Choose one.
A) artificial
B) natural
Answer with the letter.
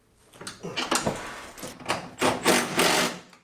B